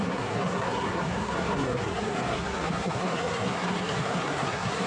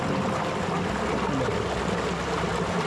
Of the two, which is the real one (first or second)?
second